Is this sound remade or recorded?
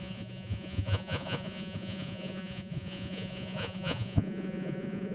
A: remade